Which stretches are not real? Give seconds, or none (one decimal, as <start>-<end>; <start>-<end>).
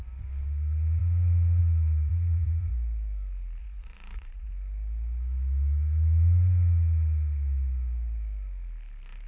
1.0-1.6; 2.1-2.7; 3.6-4.5